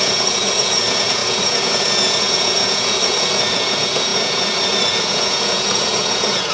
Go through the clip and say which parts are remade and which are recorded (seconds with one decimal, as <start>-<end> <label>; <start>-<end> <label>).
0.0-6.5 remade